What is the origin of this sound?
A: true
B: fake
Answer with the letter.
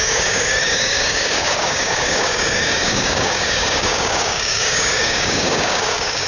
B